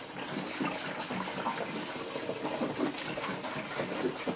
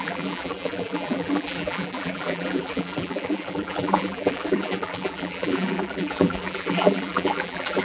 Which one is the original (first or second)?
first